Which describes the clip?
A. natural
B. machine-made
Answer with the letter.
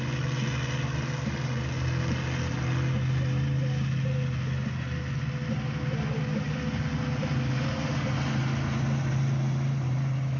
A